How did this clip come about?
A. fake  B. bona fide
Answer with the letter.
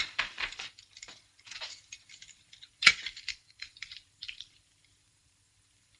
A